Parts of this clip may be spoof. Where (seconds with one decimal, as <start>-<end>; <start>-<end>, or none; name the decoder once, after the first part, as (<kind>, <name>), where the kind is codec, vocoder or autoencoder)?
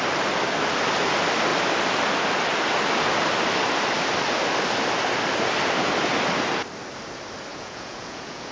7.5-8.5 (vocoder, Vocos)